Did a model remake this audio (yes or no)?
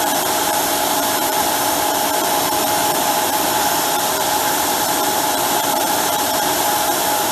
yes